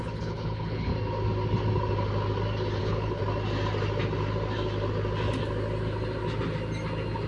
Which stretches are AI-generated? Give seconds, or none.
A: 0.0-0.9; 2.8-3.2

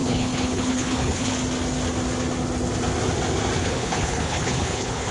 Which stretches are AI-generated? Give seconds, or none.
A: 0.0-1.3; 3.6-5.1

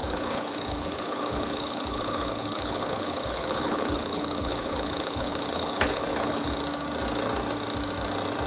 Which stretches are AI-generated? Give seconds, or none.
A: 0.0-6.5